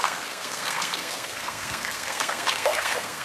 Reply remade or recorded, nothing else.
remade